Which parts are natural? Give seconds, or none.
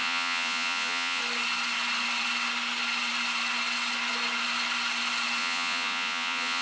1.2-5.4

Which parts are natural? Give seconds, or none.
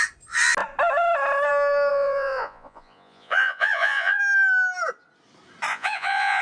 0.0-1.9; 4.2-5.7